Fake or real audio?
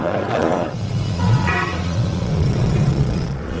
fake